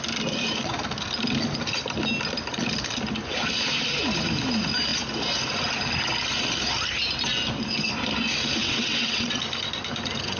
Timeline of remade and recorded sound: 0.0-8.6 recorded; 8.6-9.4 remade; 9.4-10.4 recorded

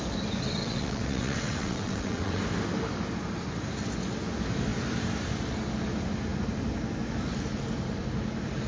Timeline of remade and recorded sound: 0.0-0.6 recorded; 0.6-2.4 remade; 2.4-8.7 recorded